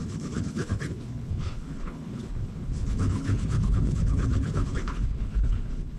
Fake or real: fake